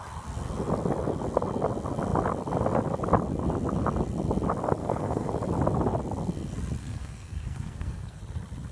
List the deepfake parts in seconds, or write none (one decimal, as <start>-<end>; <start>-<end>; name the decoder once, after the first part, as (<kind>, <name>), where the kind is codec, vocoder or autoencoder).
4.8-5.3 (codec, SNAC); 6.8-8.2